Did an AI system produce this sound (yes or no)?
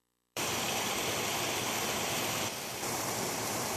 yes